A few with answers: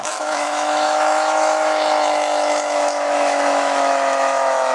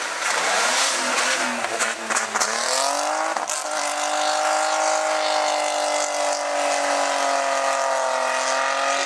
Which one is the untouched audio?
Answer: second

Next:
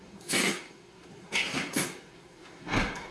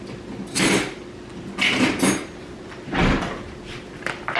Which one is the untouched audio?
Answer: second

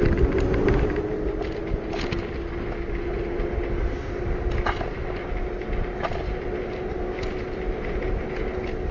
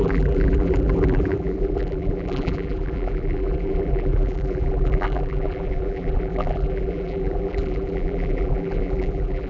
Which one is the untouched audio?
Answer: first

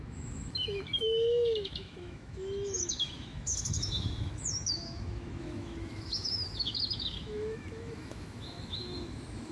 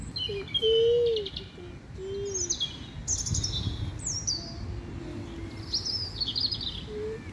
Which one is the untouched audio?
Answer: second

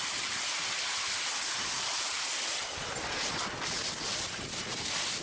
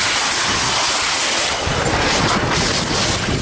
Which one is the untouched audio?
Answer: second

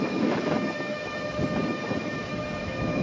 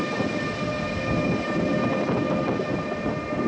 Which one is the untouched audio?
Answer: second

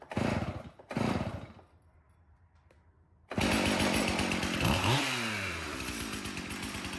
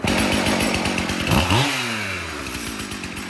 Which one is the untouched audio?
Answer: second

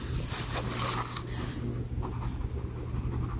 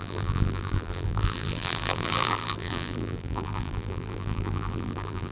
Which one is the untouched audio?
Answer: first